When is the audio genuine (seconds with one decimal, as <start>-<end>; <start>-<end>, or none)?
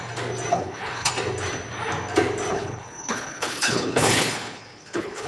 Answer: 0.0-0.5; 1.1-2.5